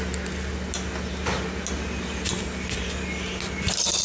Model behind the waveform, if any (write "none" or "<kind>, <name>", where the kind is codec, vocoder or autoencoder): none